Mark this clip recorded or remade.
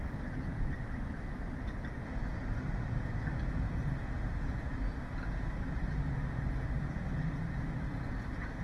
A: recorded